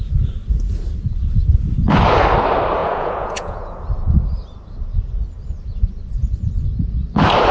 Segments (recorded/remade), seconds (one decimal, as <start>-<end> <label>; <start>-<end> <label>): 0.0-2.8 recorded; 2.8-3.8 remade; 3.8-7.5 recorded